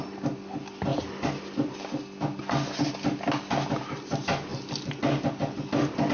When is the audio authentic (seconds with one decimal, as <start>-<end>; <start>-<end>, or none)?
0.0-6.1